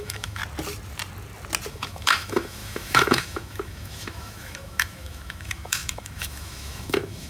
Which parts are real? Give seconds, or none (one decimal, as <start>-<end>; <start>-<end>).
0.4-1.7